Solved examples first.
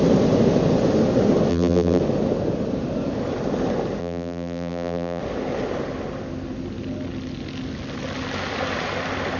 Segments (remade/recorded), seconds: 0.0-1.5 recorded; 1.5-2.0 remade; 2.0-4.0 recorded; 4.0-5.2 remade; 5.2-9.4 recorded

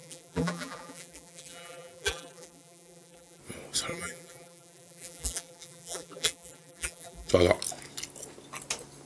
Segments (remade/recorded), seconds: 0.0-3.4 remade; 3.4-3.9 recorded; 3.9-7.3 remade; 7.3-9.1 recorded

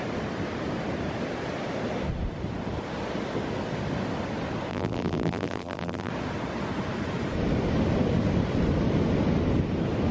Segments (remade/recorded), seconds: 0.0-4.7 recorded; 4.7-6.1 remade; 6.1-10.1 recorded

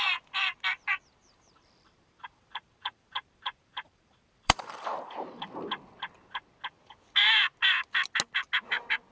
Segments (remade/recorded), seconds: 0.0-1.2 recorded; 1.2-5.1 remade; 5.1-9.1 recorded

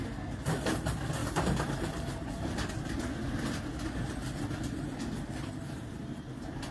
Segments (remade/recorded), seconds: 0.0-1.2 recorded; 1.2-2.7 remade; 2.7-6.7 recorded

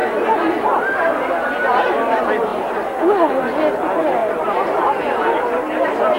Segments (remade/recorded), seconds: 0.0-4.2 recorded; 4.2-5.4 remade; 5.4-6.2 recorded

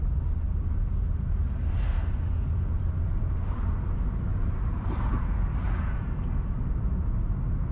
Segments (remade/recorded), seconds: 0.0-1.9 recorded; 1.9-3.7 remade; 3.7-4.3 recorded; 4.3-5.2 remade; 5.2-7.7 recorded

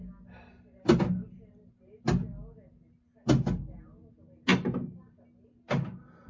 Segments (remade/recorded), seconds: 0.0-6.3 recorded